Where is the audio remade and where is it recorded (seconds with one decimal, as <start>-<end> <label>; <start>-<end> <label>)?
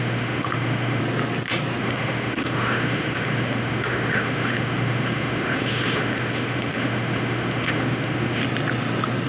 0.0-1.0 remade; 1.0-1.8 recorded; 1.8-8.4 remade; 8.4-9.3 recorded